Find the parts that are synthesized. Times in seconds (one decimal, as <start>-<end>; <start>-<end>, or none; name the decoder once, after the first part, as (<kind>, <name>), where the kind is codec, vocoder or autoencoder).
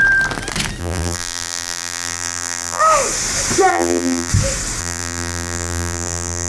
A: 0.8-2.8 (vocoder, BigVGAN v2); 3.7-4.3; 4.8-6.5